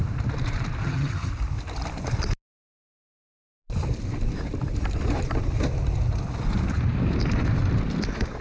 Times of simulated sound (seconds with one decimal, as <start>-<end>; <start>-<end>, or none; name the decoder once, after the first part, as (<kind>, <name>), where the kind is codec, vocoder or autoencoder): 0.8-1.3 (vocoder, HiFi-GAN)